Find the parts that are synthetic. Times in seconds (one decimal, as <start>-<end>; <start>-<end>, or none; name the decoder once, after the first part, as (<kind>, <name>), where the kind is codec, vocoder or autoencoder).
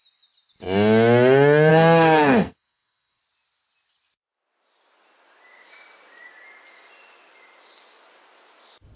1.7-3.2 (codec, SNAC)